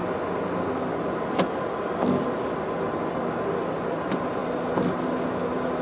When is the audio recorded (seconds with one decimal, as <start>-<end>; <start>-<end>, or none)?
0.0-5.8